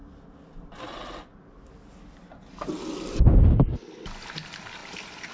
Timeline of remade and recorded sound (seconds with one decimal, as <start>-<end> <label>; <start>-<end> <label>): 0.0-5.3 recorded